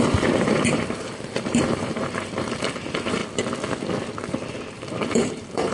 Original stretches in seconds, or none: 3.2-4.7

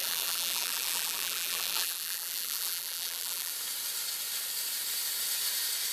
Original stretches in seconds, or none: 3.5-5.9

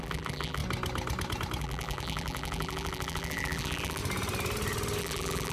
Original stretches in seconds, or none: 0.6-1.6; 4.0-5.0